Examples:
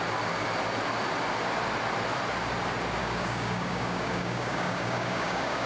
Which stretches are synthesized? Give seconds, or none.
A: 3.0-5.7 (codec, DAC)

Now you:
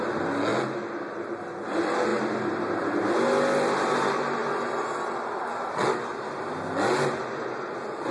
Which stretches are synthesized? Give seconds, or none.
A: none

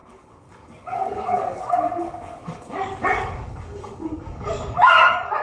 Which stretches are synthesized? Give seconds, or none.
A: 0.0-5.4 (codec, DAC)